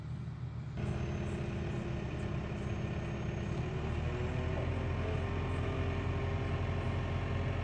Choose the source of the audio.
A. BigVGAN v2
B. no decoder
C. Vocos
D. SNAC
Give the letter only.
B